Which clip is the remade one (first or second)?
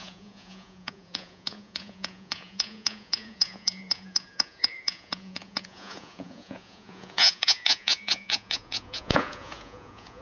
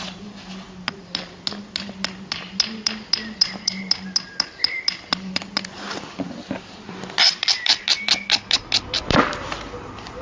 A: first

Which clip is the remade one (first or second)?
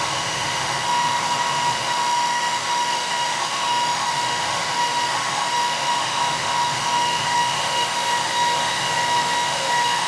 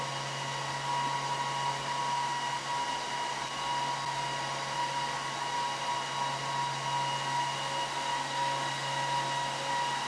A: first